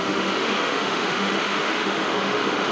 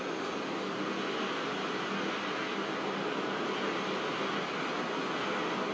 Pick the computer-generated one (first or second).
first